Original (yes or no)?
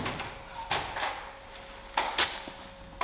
yes